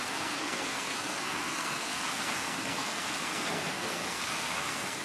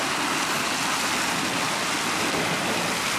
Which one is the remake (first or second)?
first